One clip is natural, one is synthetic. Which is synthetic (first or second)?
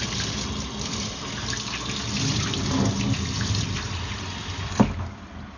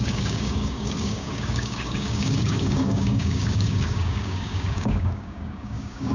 second